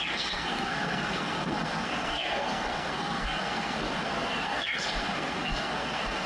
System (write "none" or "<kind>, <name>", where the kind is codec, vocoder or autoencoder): codec, SNAC